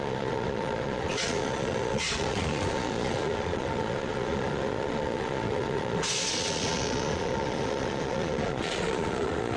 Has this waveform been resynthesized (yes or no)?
yes